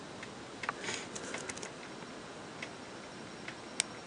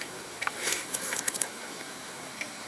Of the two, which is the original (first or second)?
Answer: first